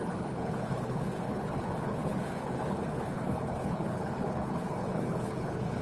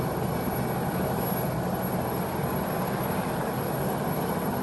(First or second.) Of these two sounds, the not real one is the first